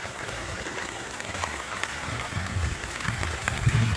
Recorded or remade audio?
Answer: remade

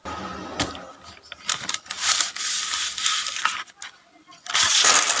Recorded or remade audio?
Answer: recorded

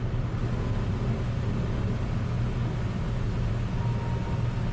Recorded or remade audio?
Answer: recorded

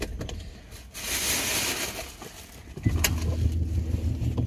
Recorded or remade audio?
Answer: recorded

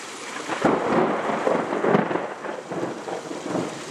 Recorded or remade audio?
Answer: recorded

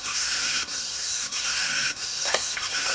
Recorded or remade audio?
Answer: remade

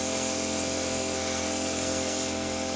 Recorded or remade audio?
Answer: remade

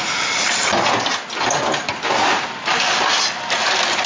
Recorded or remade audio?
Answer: recorded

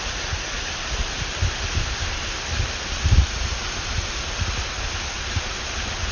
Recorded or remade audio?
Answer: recorded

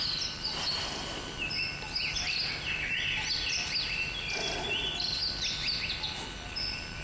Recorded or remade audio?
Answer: recorded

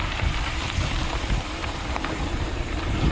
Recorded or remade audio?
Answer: remade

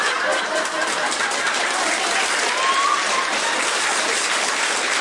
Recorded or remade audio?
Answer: recorded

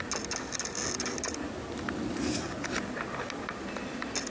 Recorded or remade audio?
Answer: recorded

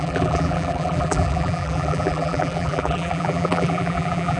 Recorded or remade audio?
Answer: remade